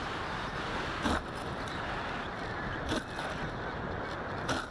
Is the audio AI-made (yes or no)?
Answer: no